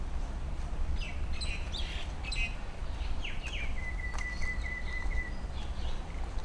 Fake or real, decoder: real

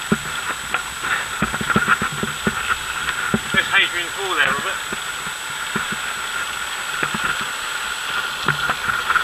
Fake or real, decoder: real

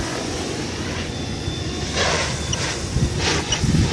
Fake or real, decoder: fake, vocoder, Vocos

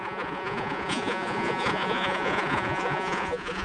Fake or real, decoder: fake, vocoder, Vocos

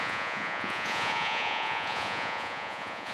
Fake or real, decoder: fake, vocoder, Vocos